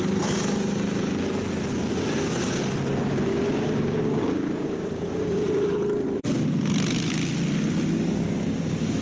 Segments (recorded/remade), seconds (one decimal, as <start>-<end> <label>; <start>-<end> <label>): 0.0-3.3 recorded; 3.3-5.4 remade; 5.4-9.0 recorded